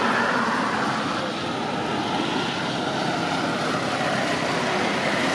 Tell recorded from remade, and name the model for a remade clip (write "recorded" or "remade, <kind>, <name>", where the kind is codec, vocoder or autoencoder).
recorded